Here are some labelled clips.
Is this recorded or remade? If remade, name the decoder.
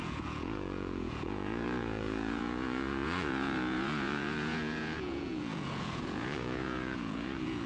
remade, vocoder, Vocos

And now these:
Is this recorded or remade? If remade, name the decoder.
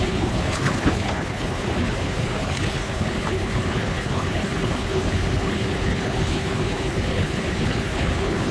remade, codec, HILCodec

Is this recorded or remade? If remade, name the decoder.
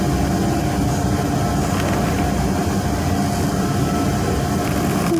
recorded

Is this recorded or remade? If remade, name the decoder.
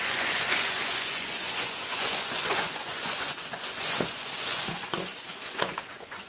remade, vocoder, Vocos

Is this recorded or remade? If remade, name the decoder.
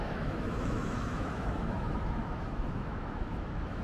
remade, autoencoder, DAC-VAE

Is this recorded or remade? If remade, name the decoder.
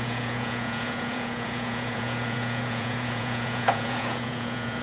remade, vocoder, Vocos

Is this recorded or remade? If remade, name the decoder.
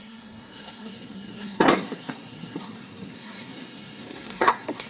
remade, codec, SNAC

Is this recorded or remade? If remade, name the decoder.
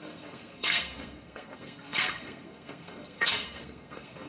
remade, codec, SNAC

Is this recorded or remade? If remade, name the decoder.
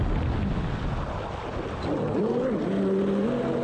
recorded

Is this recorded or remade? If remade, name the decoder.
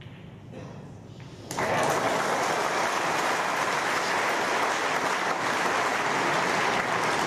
recorded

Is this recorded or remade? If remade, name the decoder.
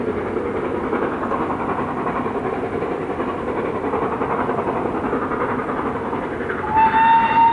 recorded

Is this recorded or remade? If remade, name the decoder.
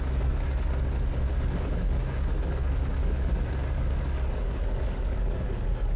remade, codec, DAC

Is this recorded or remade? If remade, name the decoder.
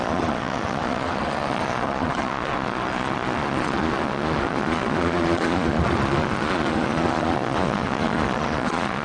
remade, vocoder, Vocos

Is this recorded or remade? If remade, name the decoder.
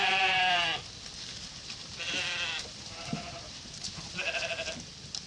remade, vocoder, BigVGAN v2